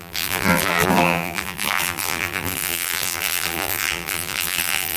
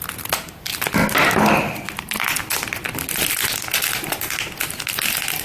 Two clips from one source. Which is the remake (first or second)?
first